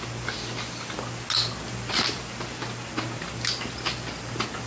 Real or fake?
real